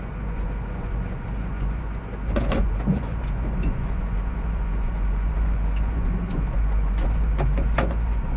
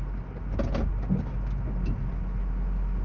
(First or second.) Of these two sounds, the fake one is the first